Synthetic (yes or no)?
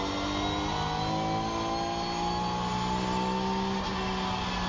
no